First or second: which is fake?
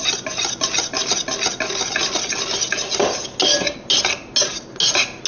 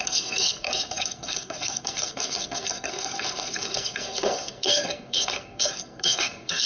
second